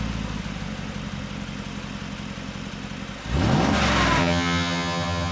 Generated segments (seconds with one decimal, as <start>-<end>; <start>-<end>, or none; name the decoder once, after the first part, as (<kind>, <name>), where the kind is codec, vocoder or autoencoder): 4.2-5.3 (vocoder, HiFi-GAN)

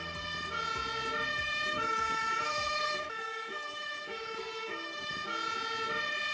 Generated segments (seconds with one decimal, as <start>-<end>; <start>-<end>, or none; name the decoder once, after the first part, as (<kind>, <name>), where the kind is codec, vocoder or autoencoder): 1.3-5.1 (autoencoder, DAC-VAE)

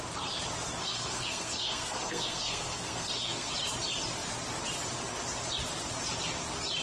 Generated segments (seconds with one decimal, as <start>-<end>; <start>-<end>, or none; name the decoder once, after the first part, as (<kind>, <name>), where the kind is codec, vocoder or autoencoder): 0.8-3.5 (codec, SNAC)

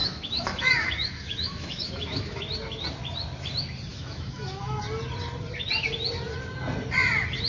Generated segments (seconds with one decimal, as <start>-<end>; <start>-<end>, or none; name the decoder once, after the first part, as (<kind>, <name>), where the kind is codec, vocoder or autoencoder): 0.0-2.4 (autoencoder, DAC-VAE); 3.9-4.8

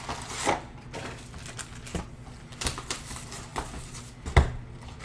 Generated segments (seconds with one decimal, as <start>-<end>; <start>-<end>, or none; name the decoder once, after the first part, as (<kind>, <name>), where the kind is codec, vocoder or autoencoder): none